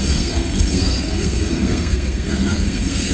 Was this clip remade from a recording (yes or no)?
yes